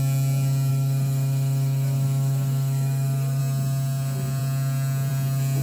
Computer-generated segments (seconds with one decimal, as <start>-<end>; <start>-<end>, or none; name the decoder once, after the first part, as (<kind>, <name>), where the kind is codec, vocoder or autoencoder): 0.7-3.4 (autoencoder, DAC-VAE)